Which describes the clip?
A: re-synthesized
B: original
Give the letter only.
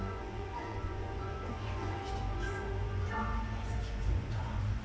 A